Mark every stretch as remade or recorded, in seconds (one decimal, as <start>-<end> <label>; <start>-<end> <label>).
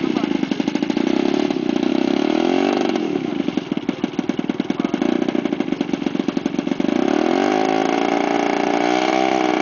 0.0-1.9 recorded; 1.9-3.3 remade; 3.3-9.6 recorded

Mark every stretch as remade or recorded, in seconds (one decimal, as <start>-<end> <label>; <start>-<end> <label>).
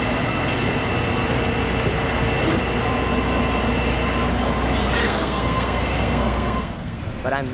0.0-5.0 recorded; 5.0-7.0 remade; 7.0-7.5 recorded